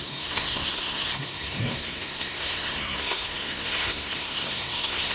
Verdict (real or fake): fake